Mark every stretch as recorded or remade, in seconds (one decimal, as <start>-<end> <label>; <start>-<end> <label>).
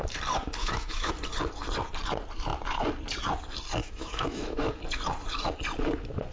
0.0-0.6 recorded; 0.6-1.1 remade; 1.1-3.8 recorded; 3.8-4.7 remade; 4.7-6.3 recorded